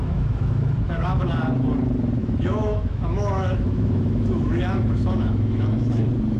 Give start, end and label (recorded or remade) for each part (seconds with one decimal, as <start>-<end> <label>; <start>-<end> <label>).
0.0-1.3 remade; 1.3-2.2 recorded; 2.2-6.0 remade; 6.0-6.4 recorded